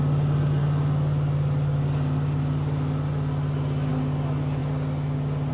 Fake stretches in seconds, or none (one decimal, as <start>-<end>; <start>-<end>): none